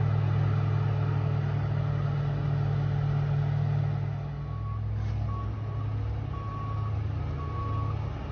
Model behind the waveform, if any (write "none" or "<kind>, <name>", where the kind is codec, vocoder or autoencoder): none